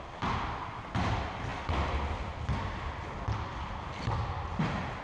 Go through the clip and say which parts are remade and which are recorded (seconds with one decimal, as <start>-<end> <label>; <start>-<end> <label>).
0.0-5.0 recorded